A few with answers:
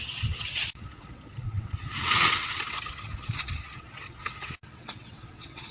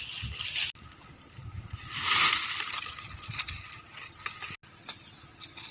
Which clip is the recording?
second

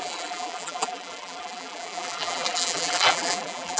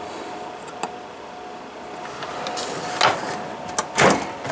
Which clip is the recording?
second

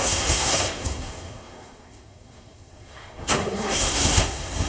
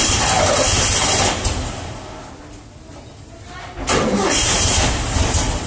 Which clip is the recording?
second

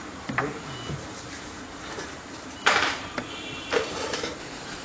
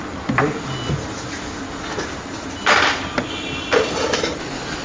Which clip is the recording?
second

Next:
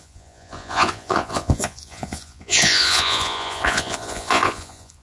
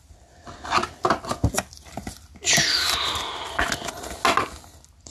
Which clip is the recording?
second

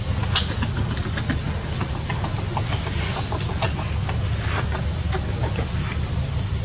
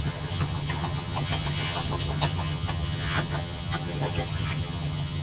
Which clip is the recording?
first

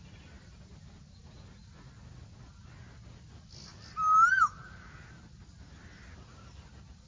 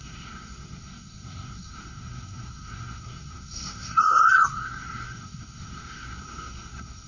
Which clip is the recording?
first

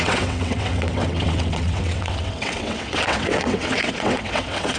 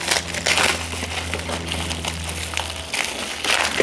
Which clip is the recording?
second